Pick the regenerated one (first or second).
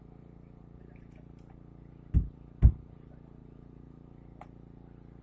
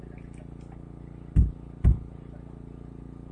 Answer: first